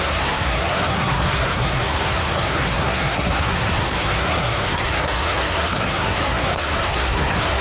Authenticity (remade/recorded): remade